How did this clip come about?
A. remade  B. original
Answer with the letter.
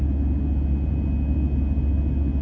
B